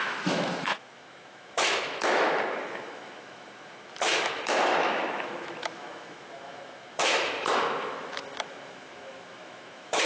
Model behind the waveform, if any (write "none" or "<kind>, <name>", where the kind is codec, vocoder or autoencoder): autoencoder, DAC-VAE